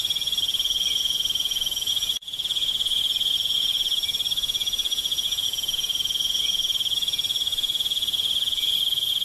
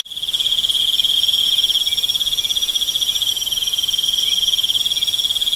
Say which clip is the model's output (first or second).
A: first